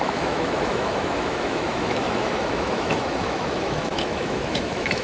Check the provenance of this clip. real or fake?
fake